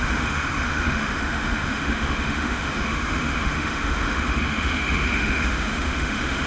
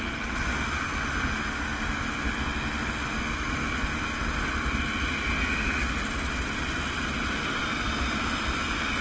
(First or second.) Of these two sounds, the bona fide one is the second